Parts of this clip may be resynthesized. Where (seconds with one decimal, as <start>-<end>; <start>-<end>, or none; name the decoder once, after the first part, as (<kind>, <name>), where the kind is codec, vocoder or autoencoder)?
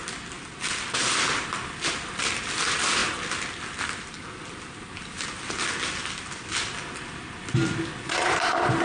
none